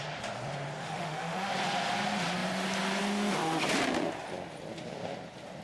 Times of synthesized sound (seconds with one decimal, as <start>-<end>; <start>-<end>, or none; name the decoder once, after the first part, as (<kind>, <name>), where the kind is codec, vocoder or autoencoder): 0.8-1.5 (autoencoder, DAC-VAE)